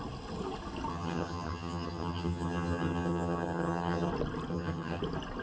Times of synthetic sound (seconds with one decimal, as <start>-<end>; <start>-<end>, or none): 0.9-4.1; 4.5-5.0